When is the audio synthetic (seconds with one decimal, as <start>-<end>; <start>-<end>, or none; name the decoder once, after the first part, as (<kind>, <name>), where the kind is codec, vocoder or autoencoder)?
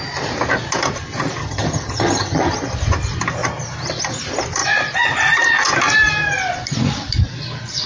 1.4-2.6 (vocoder, HiFi-GAN)